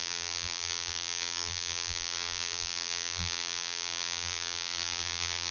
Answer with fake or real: fake